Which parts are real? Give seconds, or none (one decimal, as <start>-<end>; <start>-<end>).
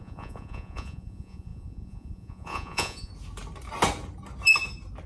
3.1-5.1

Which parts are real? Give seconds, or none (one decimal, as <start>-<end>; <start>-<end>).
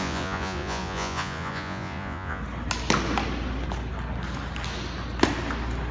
2.4-5.9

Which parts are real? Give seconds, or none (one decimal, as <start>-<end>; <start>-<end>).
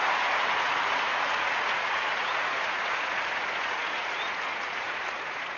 none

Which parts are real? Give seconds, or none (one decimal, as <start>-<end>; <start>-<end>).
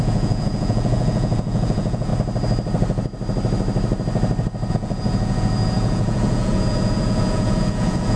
2.1-4.7